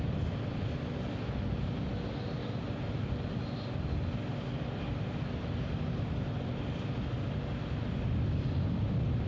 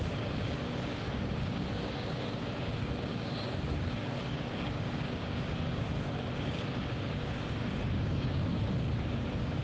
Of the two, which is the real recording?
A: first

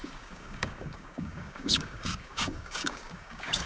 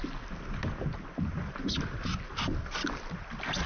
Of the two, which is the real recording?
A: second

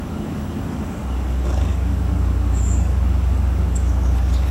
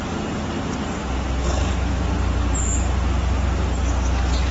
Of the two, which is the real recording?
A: second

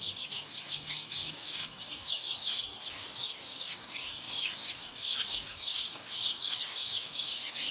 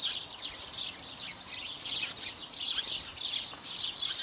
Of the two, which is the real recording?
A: second